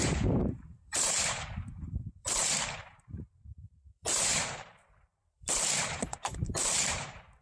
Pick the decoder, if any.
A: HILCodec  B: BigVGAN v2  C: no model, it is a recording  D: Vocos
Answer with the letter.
B